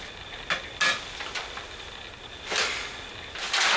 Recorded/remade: recorded